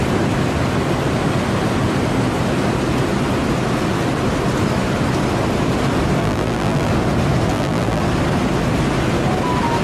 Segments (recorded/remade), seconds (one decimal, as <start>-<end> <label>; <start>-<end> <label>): 0.0-6.2 recorded; 6.2-6.9 remade; 6.9-7.5 recorded; 7.5-8.0 remade; 8.0-9.8 recorded